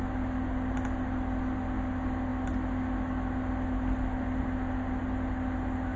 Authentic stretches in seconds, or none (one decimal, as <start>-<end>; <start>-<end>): 0.0-6.0